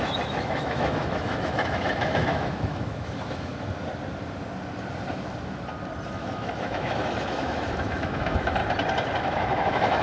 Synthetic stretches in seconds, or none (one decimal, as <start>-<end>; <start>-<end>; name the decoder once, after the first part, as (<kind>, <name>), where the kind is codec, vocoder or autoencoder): 0.0-3.5 (autoencoder, DAC-VAE); 6.1-8.6; 9.2-10.0